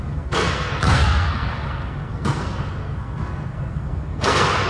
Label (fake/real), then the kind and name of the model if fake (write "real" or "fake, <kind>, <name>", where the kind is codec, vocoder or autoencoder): fake, codec, SNAC